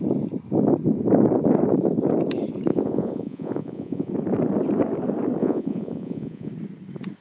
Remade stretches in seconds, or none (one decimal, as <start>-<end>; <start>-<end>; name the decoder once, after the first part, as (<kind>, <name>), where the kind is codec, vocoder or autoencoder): 2.7-4.1 (vocoder, Vocos); 5.4-6.5